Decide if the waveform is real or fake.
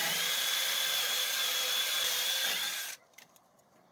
fake